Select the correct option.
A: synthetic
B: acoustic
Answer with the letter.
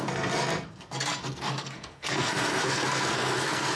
A